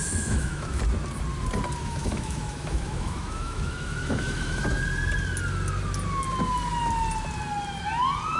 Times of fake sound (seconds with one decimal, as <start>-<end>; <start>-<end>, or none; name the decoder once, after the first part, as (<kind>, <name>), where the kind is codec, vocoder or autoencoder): 0.0-0.8 (autoencoder, DAC-VAE); 1.8-4.6